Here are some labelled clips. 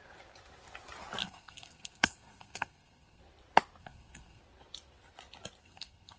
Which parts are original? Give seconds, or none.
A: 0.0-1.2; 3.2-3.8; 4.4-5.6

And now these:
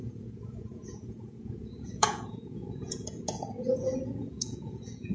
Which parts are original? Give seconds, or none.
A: none